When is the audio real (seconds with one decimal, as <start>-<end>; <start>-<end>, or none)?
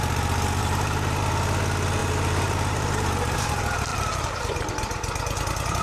0.0-0.6; 1.2-2.0; 3.4-3.9; 4.7-5.8